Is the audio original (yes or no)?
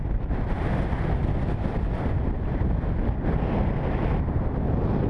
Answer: yes